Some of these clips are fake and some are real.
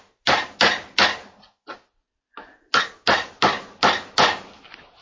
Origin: real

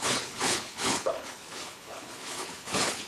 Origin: fake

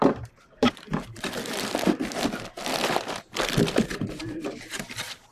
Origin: fake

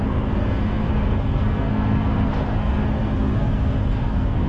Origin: fake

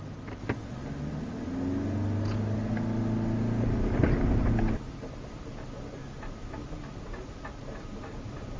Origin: real